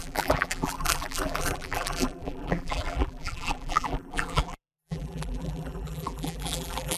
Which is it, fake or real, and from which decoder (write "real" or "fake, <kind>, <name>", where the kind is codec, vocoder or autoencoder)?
fake, vocoder, BigVGAN v2